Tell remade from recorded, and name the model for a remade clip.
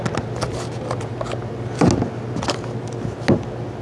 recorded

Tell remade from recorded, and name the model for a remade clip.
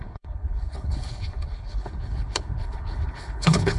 remade, codec, HILCodec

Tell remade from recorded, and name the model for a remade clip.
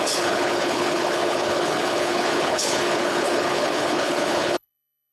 remade, codec, HILCodec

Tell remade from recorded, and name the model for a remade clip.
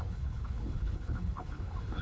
remade, codec, HILCodec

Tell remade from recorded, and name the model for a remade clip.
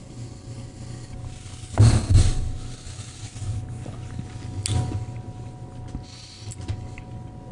recorded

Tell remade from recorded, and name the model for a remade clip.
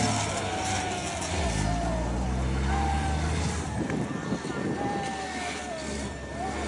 recorded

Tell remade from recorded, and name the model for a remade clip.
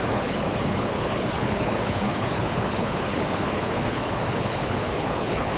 remade, codec, HILCodec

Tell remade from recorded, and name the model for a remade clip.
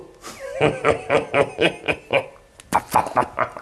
recorded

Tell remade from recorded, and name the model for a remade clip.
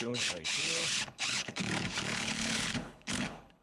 remade, codec, HILCodec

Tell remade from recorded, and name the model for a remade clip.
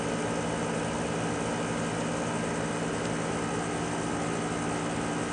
recorded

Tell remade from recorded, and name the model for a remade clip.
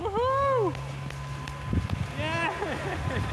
recorded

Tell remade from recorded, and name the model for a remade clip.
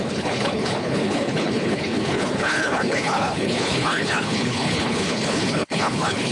remade, codec, HILCodec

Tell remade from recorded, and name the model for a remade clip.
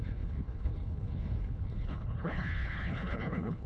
remade, codec, HILCodec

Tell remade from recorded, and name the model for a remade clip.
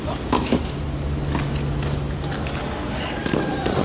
recorded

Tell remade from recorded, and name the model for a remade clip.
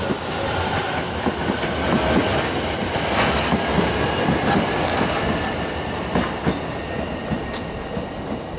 recorded